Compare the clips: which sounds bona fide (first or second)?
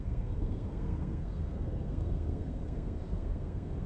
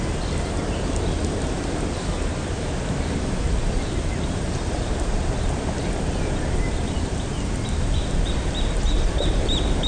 second